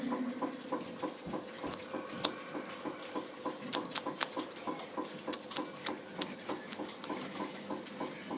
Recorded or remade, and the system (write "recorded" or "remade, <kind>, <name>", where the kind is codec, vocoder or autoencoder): recorded